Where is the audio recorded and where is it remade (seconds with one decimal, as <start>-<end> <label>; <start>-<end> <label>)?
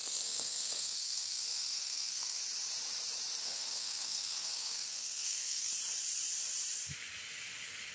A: 0.0-2.4 remade; 2.4-3.4 recorded; 3.4-5.7 remade; 5.7-7.9 recorded